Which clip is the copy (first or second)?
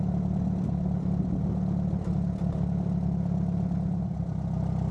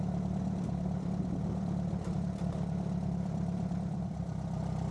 second